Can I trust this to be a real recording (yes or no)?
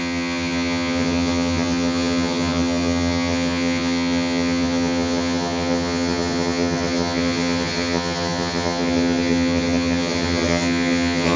no